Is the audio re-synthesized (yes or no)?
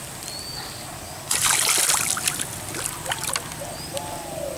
no